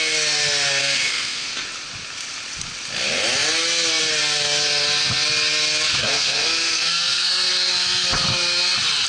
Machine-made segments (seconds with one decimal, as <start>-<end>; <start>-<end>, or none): 0.8-1.6; 6.0-7.5